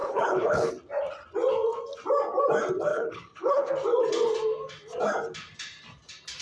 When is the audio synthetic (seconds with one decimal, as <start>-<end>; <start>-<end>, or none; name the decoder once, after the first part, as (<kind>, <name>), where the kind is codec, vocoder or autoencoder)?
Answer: 0.0-0.7 (codec, HILCodec); 2.9-3.7